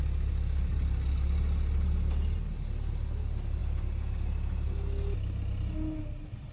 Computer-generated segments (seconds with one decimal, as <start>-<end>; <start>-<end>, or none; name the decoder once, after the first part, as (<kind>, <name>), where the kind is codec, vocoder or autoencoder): none

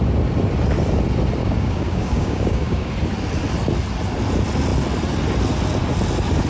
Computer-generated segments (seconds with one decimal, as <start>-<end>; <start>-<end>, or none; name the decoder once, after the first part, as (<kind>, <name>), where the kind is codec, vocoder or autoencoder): 1.4-2.9 (codec, DAC)